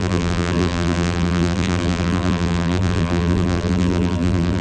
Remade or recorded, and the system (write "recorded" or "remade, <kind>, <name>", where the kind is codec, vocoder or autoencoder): remade, vocoder, BigVGAN v2